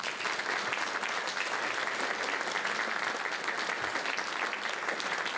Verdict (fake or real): real